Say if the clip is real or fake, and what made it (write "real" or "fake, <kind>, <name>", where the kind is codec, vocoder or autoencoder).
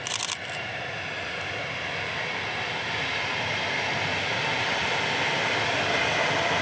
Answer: real